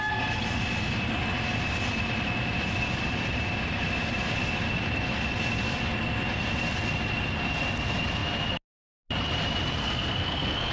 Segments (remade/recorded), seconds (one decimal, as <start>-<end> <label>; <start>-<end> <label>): 0.0-9.8 recorded; 9.8-10.7 remade